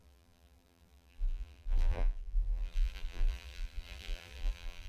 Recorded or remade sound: remade